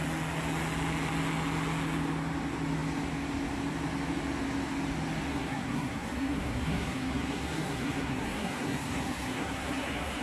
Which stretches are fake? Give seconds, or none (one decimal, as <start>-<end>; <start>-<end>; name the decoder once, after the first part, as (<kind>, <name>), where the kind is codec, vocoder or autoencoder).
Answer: 5.3-10.2 (codec, SNAC)